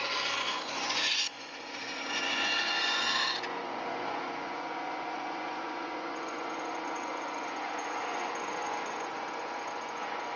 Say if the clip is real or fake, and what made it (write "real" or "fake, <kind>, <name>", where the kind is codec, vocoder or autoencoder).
fake, vocoder, Vocos